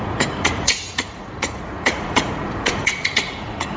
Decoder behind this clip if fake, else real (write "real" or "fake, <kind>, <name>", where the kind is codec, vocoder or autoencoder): fake, vocoder, Vocos